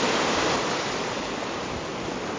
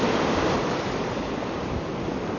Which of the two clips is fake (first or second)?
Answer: second